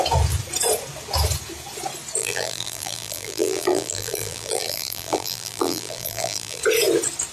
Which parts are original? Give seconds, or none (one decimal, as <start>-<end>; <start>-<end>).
0.0-2.2; 6.6-7.3